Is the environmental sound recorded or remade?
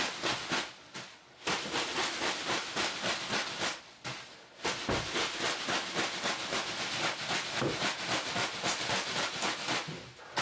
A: recorded